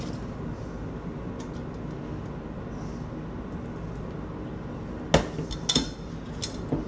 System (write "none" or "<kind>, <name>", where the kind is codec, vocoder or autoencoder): none